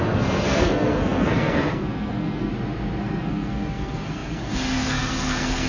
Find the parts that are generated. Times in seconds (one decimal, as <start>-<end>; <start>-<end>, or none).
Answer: 0.0-2.5; 3.0-5.7

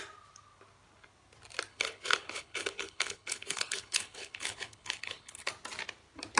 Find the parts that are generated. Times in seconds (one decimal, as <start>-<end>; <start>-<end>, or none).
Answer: 1.7-5.5

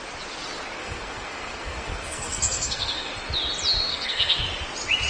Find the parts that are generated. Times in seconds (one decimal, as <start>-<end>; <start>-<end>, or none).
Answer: 0.8-3.1; 3.9-4.4

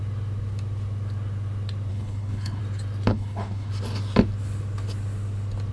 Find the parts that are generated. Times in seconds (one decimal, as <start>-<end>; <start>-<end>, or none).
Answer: 1.9-2.6; 3.1-3.7

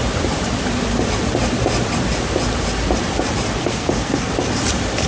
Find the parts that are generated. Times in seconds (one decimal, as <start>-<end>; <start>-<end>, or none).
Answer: 3.6-4.3